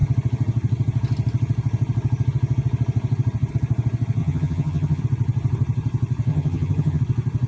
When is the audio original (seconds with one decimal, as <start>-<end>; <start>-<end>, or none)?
0.0-4.2; 5.0-6.3; 7.0-7.5